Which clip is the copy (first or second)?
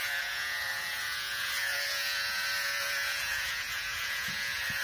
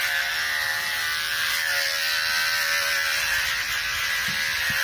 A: first